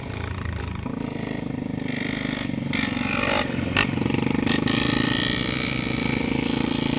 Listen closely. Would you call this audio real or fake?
fake